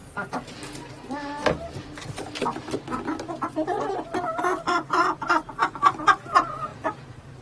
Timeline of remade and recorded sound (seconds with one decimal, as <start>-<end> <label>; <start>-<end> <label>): 0.0-6.7 recorded; 6.7-7.4 remade